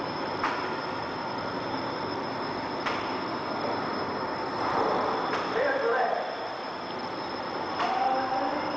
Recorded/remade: recorded